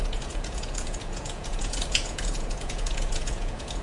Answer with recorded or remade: remade